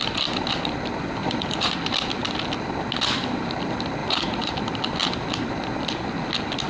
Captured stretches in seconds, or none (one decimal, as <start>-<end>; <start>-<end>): 0.0-1.2; 1.7-4.0; 4.5-6.7